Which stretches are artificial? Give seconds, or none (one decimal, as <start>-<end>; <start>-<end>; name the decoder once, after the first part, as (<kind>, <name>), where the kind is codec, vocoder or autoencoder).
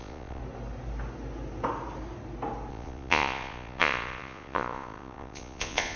0.0-0.4 (vocoder, Vocos); 2.7-6.0